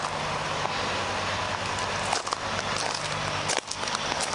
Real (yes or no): yes